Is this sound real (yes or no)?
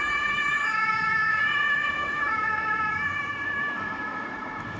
no